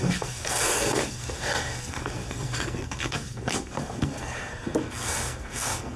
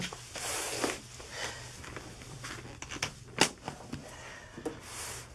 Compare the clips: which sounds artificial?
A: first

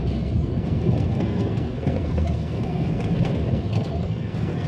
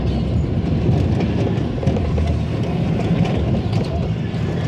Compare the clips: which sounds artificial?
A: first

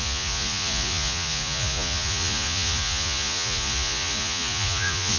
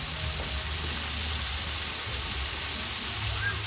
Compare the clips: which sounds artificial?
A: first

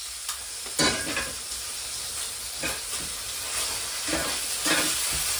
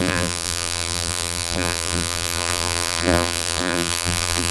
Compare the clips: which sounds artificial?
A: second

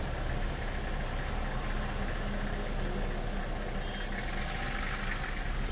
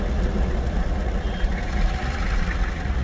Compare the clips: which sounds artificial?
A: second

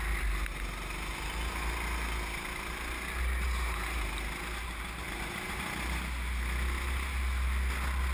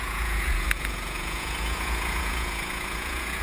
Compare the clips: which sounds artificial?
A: second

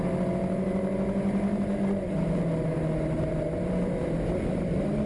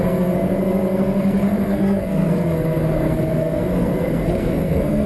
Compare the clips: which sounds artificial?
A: second